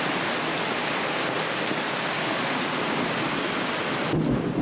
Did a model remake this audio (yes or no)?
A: no